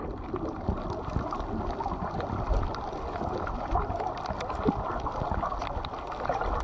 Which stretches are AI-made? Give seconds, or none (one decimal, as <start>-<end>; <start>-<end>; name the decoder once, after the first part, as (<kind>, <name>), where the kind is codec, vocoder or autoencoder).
none